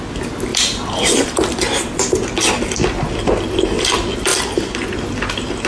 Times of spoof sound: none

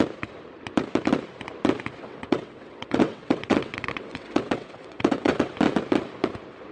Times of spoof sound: 2.0-5.5

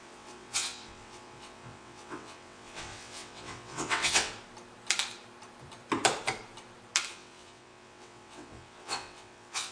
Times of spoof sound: 0.0-4.3; 7.1-9.7

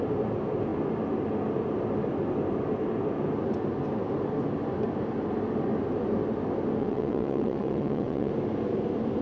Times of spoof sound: 6.8-8.3